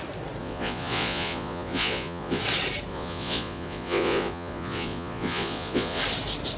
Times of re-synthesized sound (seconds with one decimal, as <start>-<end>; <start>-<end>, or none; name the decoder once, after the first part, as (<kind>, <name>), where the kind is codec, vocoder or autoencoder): 0.4-2.4 (vocoder, Vocos); 2.9-6.0